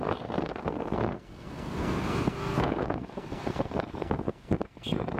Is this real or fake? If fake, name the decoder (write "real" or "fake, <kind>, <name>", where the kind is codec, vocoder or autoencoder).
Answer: fake, codec, SNAC